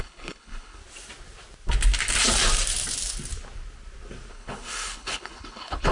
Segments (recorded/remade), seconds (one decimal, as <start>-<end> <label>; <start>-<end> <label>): 0.0-0.8 remade; 0.8-4.3 recorded; 4.3-5.9 remade